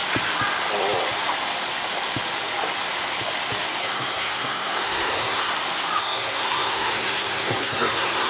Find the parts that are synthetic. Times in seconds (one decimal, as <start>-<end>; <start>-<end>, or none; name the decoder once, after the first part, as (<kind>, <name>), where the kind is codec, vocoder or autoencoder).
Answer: 3.8-5.5 (codec, SNAC); 6.0-8.3